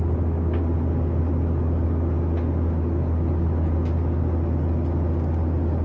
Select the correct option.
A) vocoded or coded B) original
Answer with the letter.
B